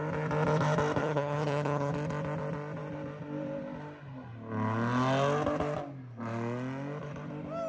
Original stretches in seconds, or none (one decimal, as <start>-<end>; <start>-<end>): 0.0-1.0; 1.9-7.7